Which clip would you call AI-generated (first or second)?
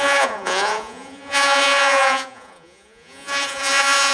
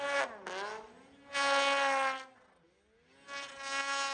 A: first